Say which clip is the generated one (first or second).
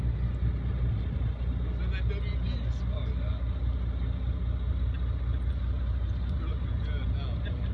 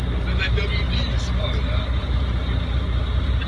second